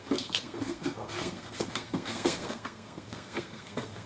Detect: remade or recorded remade